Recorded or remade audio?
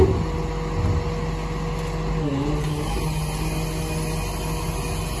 recorded